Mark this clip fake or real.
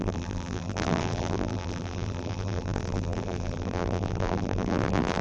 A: fake